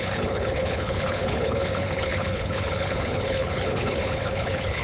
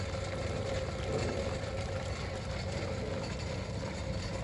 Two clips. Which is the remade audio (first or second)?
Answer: first